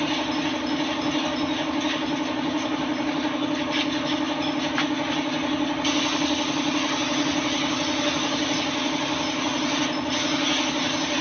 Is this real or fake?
real